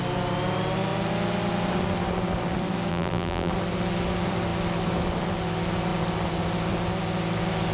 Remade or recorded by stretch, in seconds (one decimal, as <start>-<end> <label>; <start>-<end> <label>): 0.0-2.9 recorded; 2.9-3.5 remade; 3.5-7.7 recorded